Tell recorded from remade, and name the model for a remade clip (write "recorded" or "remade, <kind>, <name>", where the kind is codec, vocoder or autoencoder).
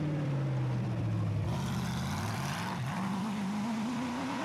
remade, vocoder, BigVGAN v2